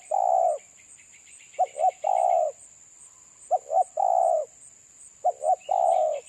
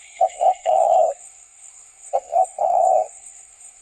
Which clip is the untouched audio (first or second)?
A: first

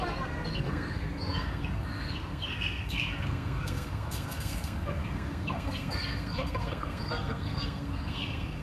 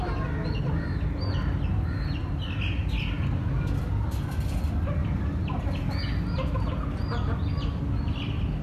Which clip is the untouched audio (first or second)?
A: second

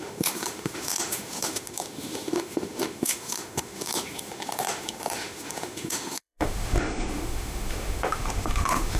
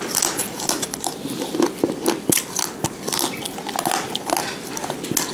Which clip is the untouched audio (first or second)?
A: second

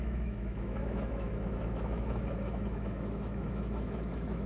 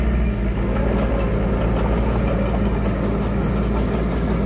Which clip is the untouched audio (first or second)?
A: second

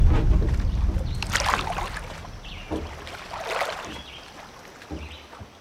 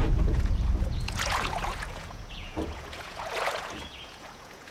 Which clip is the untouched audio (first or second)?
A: first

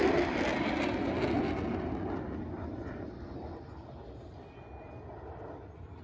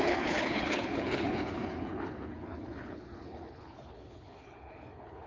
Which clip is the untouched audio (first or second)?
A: first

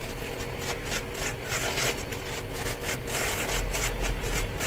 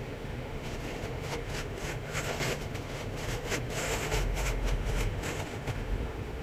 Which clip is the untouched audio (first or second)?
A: first